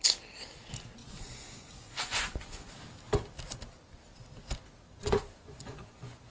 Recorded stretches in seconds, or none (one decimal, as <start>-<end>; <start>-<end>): 0.0-1.0; 2.7-4.9

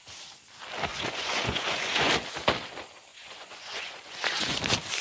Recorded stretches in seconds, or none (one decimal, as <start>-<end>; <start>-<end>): 0.0-0.9; 2.1-3.1; 4.6-5.0

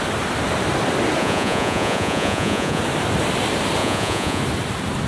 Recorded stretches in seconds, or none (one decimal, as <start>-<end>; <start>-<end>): 0.0-1.2; 2.8-3.8; 4.4-5.1

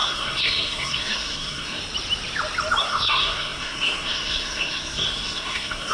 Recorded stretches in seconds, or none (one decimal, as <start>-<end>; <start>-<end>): 1.8-2.8

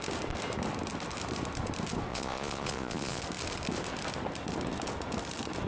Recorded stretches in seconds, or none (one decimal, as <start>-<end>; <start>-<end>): 0.0-2.1; 3.2-5.7

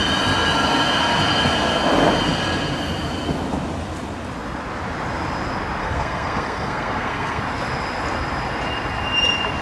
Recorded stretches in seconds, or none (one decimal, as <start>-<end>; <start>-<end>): 0.0-5.8; 7.4-9.6